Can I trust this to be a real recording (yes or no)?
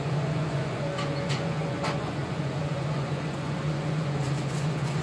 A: no